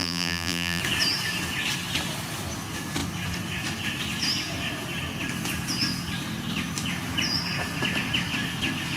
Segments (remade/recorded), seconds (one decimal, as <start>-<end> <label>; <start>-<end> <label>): 0.0-0.8 remade; 0.8-9.0 recorded